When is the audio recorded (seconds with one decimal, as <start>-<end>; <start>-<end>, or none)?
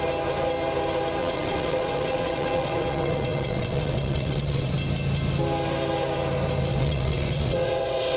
0.0-1.2; 4.7-6.7